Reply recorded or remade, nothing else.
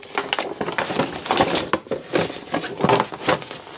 recorded